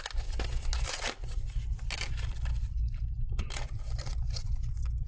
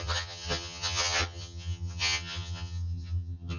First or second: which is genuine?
first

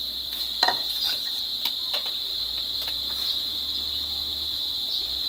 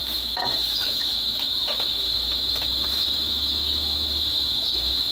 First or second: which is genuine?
first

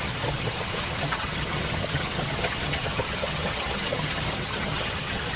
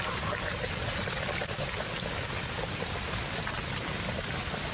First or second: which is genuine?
second